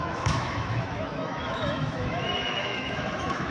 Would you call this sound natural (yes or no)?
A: no